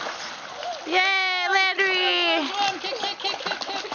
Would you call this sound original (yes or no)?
yes